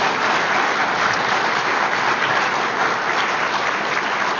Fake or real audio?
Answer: real